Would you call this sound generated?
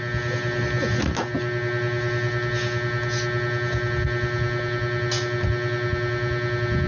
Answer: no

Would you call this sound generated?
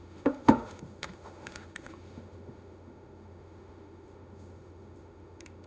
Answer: yes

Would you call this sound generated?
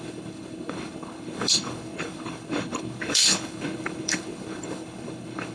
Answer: yes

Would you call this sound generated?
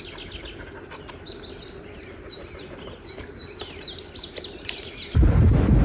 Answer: no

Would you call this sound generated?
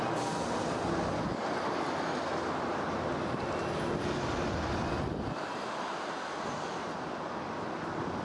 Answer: no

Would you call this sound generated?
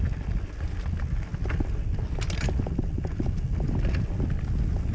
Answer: no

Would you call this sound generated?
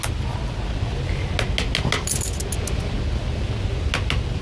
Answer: no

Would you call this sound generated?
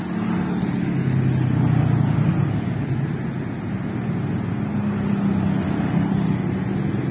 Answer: no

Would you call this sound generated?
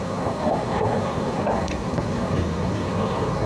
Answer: yes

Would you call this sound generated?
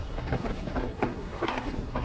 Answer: yes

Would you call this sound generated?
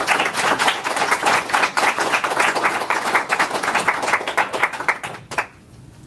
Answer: yes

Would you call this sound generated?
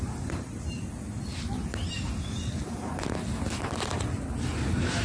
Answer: no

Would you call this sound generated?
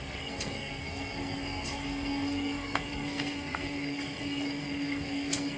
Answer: yes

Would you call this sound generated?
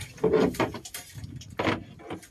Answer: no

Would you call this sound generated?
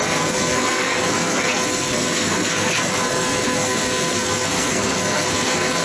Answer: yes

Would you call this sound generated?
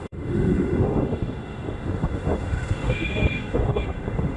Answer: yes